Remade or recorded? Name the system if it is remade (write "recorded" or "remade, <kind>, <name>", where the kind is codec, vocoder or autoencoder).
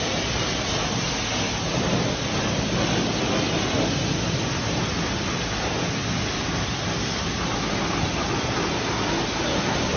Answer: recorded